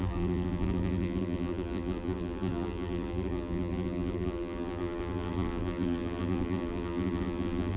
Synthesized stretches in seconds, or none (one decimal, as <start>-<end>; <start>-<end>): 0.0-7.8